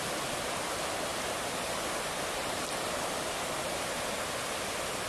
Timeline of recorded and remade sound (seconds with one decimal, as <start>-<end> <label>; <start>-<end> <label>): 0.0-1.1 recorded; 1.1-4.2 remade; 4.2-5.1 recorded